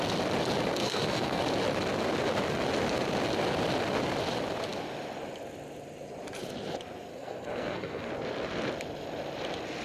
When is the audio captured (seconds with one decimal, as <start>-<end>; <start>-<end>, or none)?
0.0-0.8; 1.4-7.1; 8.1-9.8